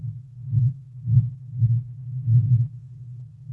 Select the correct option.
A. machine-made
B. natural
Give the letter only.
A